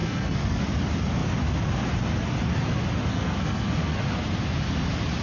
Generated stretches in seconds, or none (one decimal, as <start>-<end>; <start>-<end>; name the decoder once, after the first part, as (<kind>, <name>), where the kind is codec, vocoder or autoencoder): 0.0-0.6 (codec, SNAC); 3.1-4.0